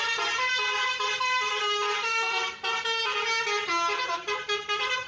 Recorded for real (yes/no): yes